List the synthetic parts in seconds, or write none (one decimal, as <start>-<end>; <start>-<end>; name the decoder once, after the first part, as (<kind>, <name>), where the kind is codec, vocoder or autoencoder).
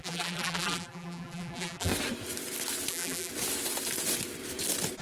0.0-1.9 (vocoder, BigVGAN v2); 2.9-3.3